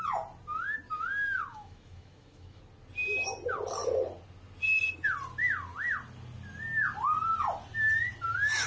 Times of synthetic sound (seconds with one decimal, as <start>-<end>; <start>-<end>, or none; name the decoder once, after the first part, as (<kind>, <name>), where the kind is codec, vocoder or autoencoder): 1.5-2.6 (autoencoder, DAC-VAE)